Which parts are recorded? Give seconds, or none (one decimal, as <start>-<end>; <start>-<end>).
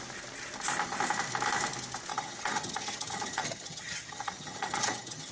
0.0-2.1